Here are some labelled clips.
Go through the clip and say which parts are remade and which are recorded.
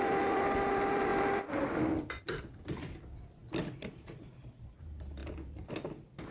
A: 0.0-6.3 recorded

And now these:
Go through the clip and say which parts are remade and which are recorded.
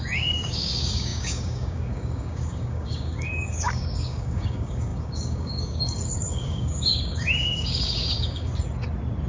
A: 0.0-8.5 remade; 8.5-9.3 recorded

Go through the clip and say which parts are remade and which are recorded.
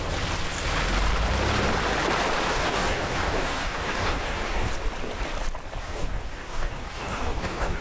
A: 0.0-2.5 recorded; 2.5-4.7 remade; 4.7-5.8 recorded; 5.8-7.8 remade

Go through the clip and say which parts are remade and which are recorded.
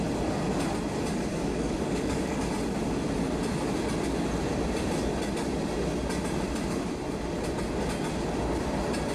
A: 0.0-1.3 recorded; 1.3-2.5 remade; 2.5-9.1 recorded